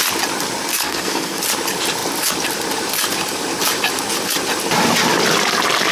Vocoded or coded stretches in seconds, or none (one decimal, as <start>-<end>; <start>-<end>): 0.7-1.4